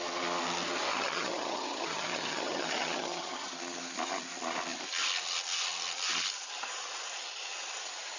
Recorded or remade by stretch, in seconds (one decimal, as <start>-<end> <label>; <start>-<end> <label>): 0.0-0.9 recorded; 0.9-3.5 remade; 3.5-8.2 recorded